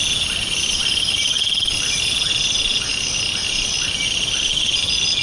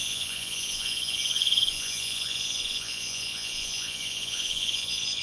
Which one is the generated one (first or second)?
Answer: second